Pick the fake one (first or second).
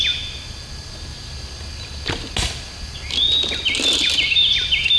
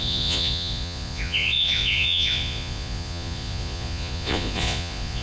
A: second